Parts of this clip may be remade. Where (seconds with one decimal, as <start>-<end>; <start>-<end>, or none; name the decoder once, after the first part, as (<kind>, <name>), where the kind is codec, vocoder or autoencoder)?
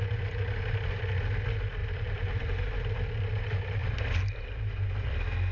1.8-2.8 (vocoder, BigVGAN v2); 3.8-4.9